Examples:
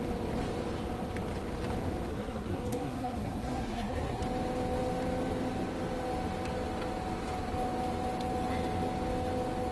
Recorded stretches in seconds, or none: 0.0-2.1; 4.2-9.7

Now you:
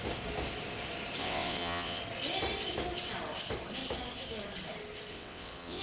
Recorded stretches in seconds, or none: 0.0-1.2; 2.0-5.1